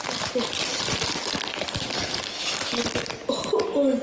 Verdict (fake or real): real